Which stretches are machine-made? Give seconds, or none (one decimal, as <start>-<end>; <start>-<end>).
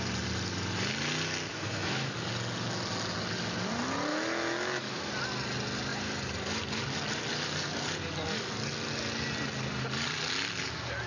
1.5-2.1; 4.1-5.1